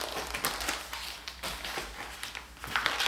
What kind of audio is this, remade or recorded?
recorded